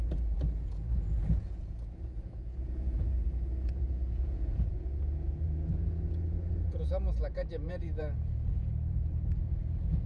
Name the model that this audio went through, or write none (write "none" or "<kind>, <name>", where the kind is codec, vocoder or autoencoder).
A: vocoder, Vocos